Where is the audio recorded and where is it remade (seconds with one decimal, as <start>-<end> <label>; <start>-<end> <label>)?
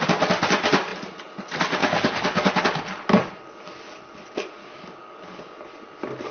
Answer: 0.0-1.8 recorded; 1.8-2.5 remade; 2.5-4.6 recorded; 4.6-5.4 remade; 5.4-6.3 recorded